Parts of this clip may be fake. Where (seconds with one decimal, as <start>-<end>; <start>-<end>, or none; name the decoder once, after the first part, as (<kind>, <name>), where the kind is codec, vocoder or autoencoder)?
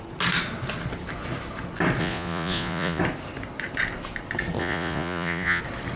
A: 2.0-3.0 (vocoder, Vocos); 4.6-5.6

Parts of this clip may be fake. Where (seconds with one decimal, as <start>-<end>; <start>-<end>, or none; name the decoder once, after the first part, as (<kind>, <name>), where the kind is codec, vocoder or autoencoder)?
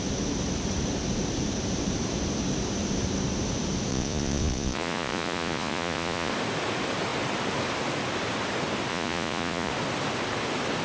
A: 3.9-6.3 (vocoder, Vocos); 8.9-9.7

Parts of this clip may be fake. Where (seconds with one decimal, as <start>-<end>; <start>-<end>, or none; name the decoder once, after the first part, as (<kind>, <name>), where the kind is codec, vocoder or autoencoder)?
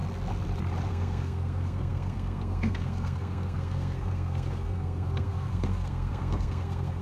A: 0.9-7.0 (codec, SNAC)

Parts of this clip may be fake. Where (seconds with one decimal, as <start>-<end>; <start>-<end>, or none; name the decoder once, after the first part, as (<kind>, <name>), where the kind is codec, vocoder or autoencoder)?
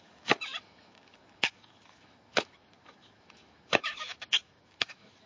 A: 0.0-5.3 (autoencoder, DAC-VAE)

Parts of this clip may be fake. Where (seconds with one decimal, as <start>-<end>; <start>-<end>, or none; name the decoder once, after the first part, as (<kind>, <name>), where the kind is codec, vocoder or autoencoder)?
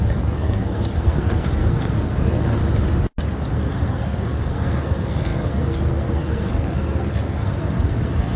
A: 0.0-2.6 (codec, SNAC); 3.5-8.4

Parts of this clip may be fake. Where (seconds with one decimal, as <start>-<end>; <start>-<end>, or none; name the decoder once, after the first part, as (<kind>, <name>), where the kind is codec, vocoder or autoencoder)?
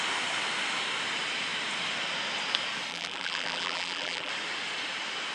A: 2.9-4.3 (vocoder, BigVGAN v2)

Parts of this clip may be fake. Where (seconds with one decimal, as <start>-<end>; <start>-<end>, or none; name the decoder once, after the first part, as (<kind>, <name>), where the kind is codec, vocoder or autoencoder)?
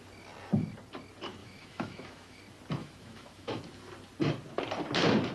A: 1.4-2.4 (autoencoder, DAC-VAE); 2.8-3.6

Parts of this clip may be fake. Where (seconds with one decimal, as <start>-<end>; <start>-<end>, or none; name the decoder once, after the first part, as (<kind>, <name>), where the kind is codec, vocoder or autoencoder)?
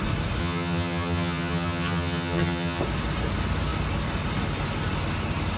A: 0.4-2.8 (vocoder, HiFi-GAN)